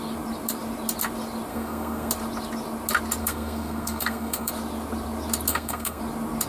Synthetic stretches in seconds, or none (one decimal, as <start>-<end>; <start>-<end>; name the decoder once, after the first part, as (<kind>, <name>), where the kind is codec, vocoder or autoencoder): 1.5-2.1 (codec, SNAC); 3.2-4.5; 5.5-6.0